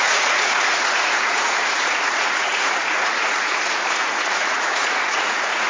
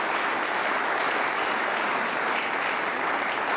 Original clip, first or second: second